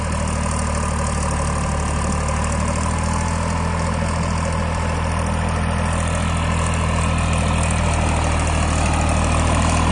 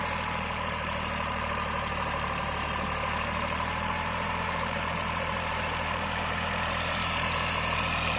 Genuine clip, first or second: first